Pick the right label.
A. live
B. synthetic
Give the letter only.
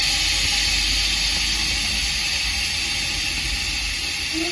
A